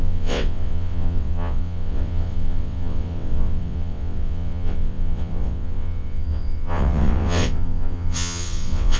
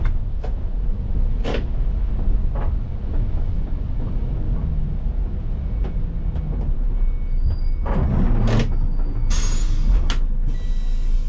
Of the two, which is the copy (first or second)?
first